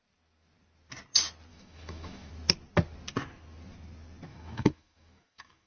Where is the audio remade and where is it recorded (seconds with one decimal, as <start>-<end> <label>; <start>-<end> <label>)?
0.0-1.5 recorded; 1.5-2.3 remade; 2.3-4.3 recorded; 4.3-5.7 remade